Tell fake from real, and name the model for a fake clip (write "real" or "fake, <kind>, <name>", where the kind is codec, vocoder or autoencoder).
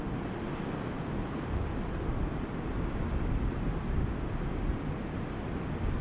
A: real